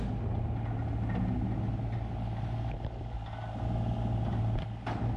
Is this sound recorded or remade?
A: recorded